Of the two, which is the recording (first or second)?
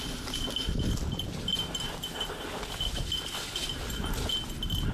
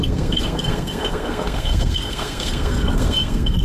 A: first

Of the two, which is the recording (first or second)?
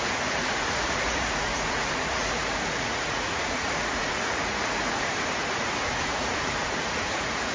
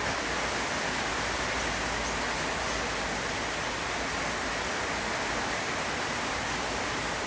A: second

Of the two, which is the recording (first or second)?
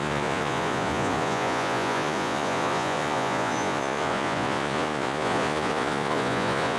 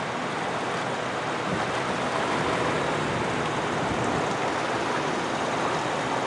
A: second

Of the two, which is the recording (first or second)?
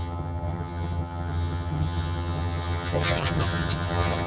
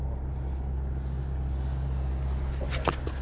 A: second